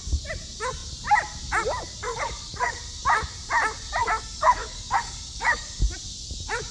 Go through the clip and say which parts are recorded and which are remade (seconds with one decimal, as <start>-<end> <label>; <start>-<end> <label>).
0.0-2.0 recorded; 2.0-2.8 remade; 2.8-4.0 recorded; 4.0-5.8 remade; 5.8-6.7 recorded